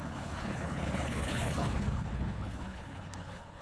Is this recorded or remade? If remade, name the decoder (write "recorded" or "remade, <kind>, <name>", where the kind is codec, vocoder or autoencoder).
remade, codec, HILCodec